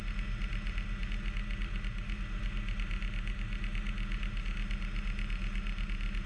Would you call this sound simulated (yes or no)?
no